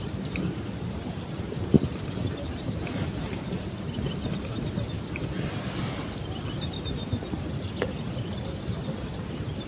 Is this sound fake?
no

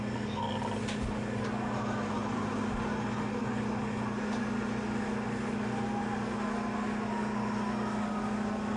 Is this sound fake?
no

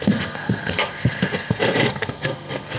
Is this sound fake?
yes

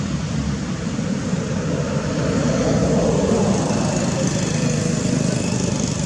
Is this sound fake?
no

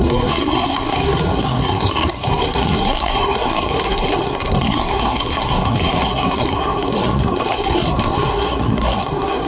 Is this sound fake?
yes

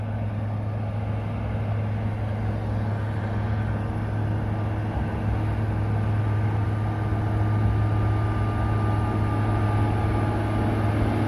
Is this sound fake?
no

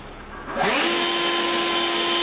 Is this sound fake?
no